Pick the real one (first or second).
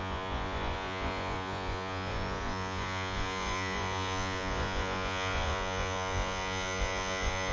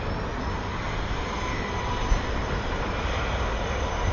second